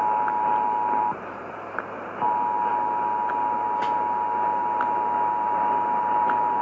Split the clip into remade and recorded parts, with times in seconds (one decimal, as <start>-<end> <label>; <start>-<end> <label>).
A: 0.0-6.6 recorded